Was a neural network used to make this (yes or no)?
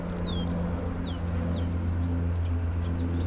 no